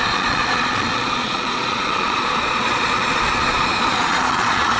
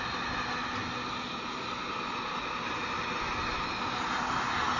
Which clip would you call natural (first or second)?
second